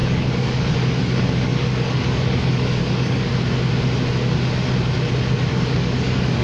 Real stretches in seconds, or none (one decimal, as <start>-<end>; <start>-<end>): 3.3-5.5

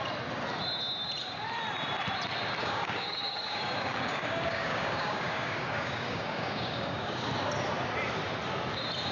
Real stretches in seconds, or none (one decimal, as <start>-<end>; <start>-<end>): 0.0-2.6; 7.3-9.1

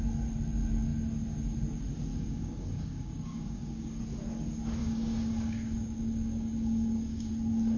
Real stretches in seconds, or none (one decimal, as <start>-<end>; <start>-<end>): 0.0-2.1; 4.0-4.8; 7.3-7.8

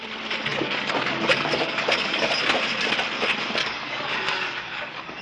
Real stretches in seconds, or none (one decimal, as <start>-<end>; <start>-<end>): 0.0-0.5; 2.3-3.6